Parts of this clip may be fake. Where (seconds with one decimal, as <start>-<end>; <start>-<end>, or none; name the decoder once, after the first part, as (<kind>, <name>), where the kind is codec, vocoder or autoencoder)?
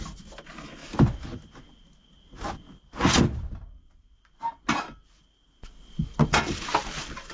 none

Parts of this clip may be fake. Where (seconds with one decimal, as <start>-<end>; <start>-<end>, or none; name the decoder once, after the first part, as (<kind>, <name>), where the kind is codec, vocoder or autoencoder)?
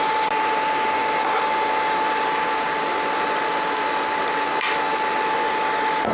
none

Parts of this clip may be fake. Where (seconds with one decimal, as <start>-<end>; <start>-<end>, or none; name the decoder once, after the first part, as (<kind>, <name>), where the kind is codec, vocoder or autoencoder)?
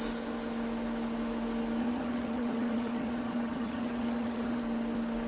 1.8-4.6 (vocoder, HiFi-GAN)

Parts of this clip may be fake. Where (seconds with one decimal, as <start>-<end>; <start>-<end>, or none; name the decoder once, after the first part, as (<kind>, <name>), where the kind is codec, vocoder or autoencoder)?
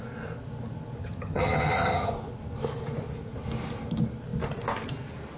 1.0-2.1 (vocoder, HiFi-GAN)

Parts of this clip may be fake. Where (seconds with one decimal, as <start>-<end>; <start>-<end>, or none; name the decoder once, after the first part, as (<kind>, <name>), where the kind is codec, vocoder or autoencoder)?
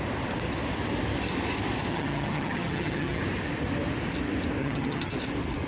1.9-3.2 (vocoder, HiFi-GAN); 4.6-5.1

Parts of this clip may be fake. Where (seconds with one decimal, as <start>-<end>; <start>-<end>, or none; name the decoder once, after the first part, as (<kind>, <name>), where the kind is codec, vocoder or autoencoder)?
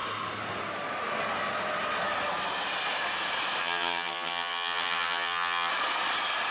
3.6-5.7 (vocoder, HiFi-GAN)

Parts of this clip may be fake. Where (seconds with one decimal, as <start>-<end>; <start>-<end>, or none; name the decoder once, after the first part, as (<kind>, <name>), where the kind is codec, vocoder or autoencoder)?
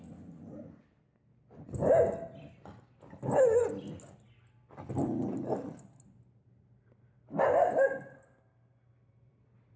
none